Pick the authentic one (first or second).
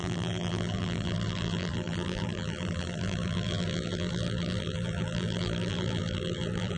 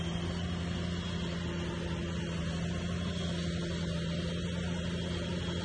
second